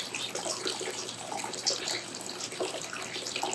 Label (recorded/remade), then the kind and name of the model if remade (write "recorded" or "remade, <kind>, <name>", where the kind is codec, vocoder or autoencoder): recorded